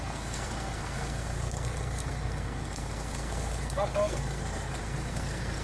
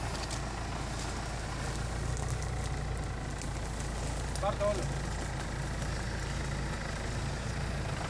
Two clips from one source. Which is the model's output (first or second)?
first